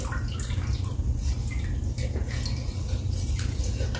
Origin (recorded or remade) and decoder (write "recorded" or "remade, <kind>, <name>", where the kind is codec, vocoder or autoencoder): recorded